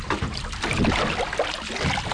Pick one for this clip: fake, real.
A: real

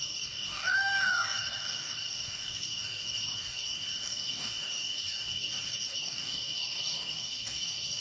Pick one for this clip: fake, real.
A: fake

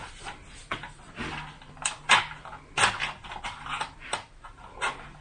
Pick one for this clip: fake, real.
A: real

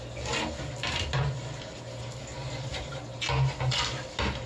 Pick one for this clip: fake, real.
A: real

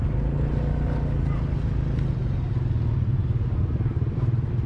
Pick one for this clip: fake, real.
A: real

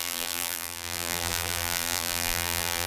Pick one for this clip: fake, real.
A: fake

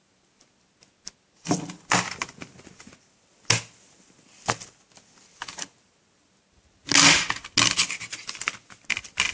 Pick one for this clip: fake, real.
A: real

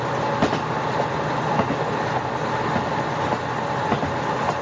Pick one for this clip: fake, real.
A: real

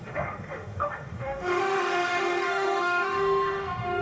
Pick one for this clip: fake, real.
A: fake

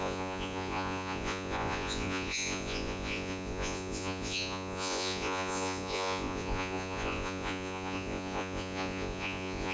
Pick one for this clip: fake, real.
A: fake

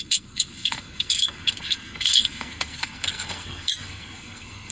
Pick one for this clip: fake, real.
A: fake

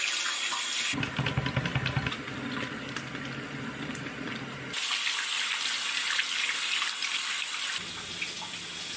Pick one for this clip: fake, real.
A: real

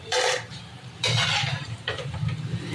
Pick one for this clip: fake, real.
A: fake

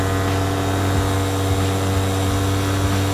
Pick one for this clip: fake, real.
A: real